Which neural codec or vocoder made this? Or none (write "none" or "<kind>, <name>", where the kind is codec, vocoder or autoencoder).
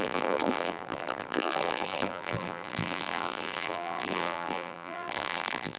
vocoder, BigVGAN v2